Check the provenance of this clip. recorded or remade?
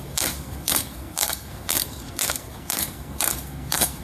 remade